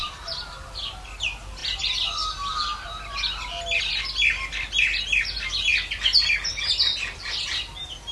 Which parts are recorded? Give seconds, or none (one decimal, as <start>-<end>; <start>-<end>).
0.0-8.1